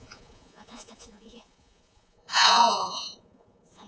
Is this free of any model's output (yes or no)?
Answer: no